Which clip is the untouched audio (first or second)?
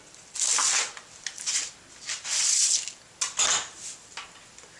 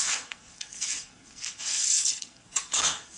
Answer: first